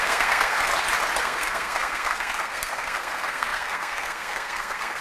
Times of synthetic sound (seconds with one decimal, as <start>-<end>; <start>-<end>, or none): 0.0-0.7; 1.2-5.0